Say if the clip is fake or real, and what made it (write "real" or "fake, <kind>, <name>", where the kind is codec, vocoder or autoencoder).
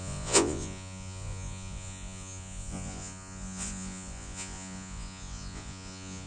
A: fake, vocoder, Vocos